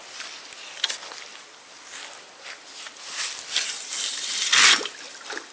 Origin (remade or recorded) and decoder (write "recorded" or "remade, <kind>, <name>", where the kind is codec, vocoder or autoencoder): recorded